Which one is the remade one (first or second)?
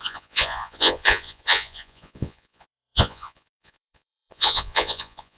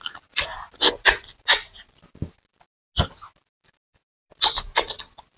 first